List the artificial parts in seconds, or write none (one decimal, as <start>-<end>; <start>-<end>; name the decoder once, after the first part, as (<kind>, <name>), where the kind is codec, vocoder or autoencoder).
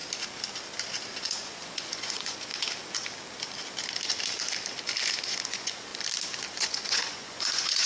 1.1-2.5 (vocoder, Vocos); 5.3-5.9; 6.5-7.9